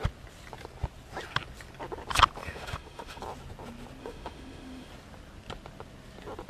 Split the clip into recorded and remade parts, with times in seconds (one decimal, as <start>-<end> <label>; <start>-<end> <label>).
0.0-2.4 recorded; 2.4-3.2 remade; 3.2-4.0 recorded; 4.0-4.9 remade; 4.9-6.5 recorded